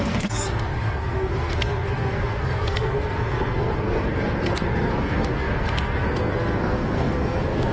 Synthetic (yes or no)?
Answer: yes